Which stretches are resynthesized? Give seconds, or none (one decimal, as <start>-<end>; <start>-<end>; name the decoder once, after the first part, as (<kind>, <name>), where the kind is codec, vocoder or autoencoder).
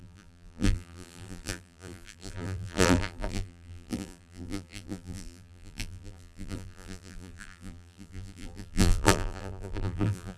0.0-10.4 (vocoder, BigVGAN v2)